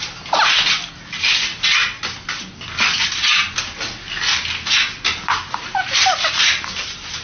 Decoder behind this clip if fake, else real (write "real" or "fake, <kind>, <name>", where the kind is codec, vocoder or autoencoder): real